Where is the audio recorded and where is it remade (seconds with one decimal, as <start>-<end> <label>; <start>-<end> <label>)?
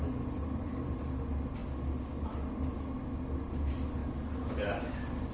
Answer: 0.0-5.3 recorded